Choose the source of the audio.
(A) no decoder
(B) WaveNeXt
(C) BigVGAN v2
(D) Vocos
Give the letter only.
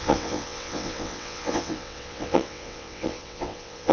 B